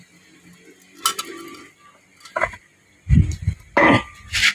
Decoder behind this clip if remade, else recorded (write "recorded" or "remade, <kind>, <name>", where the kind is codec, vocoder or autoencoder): recorded